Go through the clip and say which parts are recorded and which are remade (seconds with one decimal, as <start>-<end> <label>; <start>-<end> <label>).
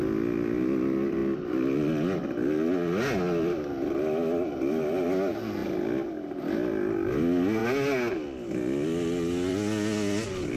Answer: 0.0-10.6 recorded